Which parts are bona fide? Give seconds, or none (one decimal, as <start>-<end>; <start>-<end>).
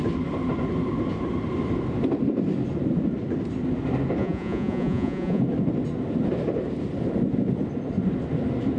0.0-4.2; 5.4-8.8